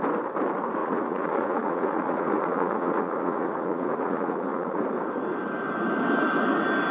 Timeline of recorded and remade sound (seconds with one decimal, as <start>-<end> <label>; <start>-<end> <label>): 0.0-0.8 recorded; 0.8-4.8 remade; 4.8-6.9 recorded